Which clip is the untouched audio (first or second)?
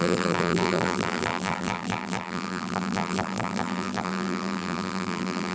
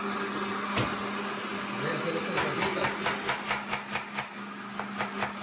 second